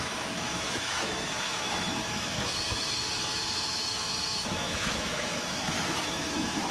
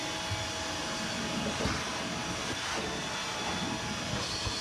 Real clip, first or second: second